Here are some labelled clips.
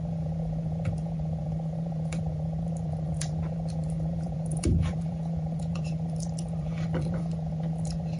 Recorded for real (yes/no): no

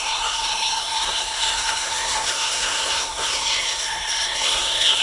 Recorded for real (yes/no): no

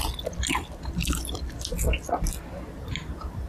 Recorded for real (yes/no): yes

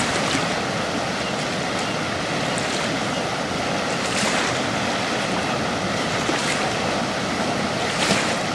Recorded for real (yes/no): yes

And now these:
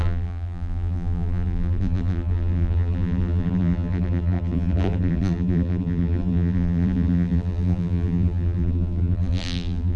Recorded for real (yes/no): no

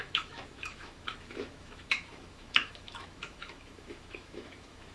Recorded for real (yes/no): no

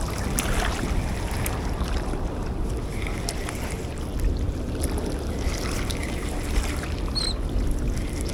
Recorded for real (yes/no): yes